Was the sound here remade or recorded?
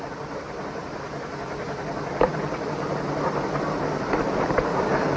recorded